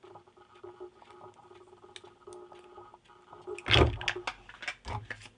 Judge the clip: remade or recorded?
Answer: recorded